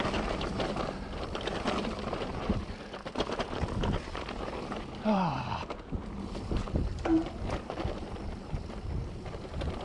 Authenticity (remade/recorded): remade